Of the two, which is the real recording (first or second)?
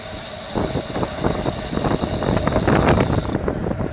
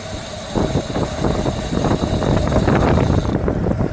first